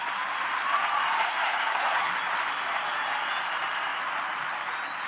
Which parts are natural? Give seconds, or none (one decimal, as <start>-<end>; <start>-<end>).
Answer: 0.0-1.2; 2.1-5.1